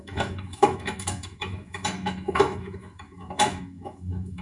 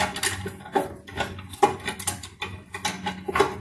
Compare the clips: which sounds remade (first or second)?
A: first